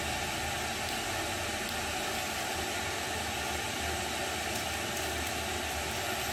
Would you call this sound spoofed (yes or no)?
no